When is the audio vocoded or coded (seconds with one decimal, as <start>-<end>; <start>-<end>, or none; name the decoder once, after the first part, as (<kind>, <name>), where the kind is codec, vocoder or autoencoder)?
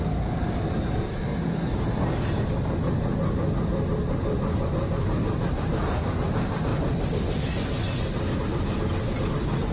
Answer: none